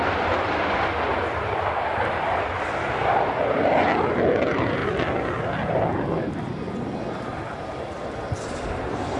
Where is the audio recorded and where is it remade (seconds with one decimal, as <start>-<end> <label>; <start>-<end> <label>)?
0.0-4.8 remade; 4.8-5.7 recorded; 5.7-9.2 remade